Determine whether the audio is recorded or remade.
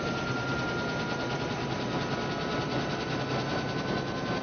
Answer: recorded